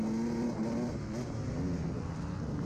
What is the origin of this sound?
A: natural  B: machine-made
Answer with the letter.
A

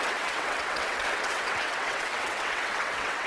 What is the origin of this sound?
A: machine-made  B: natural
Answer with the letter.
A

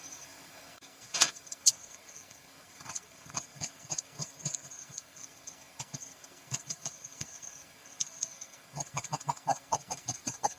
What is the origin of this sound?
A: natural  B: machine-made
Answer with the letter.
B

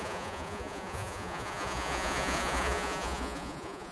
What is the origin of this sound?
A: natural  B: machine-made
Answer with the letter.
B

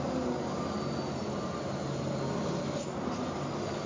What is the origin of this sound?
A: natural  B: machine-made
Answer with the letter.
A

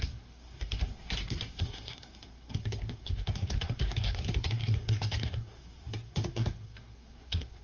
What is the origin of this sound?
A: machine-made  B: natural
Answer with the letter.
A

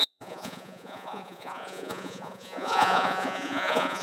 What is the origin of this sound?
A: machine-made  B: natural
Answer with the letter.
A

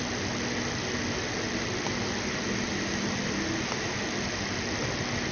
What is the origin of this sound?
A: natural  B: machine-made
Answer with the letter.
A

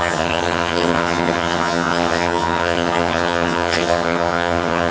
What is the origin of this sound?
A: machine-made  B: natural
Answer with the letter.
A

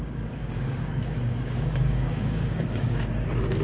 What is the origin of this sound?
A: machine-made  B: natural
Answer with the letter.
A